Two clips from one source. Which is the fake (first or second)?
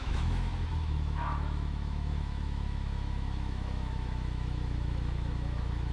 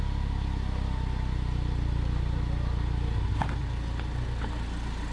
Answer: first